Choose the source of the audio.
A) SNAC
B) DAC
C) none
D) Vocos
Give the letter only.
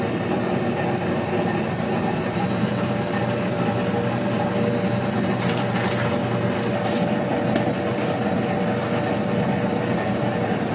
C